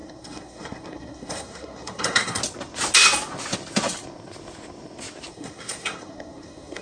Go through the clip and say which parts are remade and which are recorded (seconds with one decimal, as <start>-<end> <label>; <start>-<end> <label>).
0.0-2.4 remade; 2.4-5.3 recorded; 5.3-6.8 remade

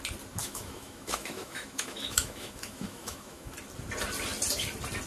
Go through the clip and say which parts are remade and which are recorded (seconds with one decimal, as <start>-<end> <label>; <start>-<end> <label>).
0.0-0.4 recorded; 0.4-3.5 remade; 3.5-5.1 recorded

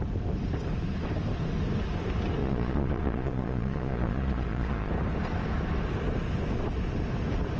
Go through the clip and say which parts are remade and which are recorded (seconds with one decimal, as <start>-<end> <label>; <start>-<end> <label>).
0.0-2.4 recorded; 2.4-4.9 remade; 4.9-7.6 recorded

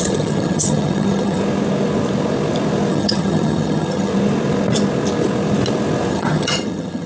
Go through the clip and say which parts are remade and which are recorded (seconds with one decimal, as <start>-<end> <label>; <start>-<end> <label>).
0.0-1.4 remade; 1.4-2.9 recorded; 2.9-4.1 remade; 4.1-6.1 recorded; 6.1-7.1 remade

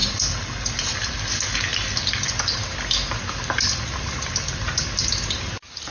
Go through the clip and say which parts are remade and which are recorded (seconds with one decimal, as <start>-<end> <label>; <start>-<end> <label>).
0.0-1.1 remade; 1.1-5.9 recorded

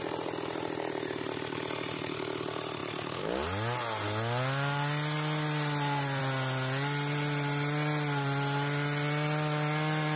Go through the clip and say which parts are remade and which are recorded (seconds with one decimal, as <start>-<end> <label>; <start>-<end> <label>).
0.0-10.2 recorded

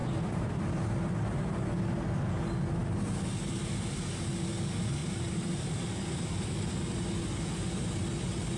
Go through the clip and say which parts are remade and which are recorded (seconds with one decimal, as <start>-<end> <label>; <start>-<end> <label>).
0.0-0.6 remade; 0.6-5.0 recorded; 5.0-5.7 remade; 5.7-8.6 recorded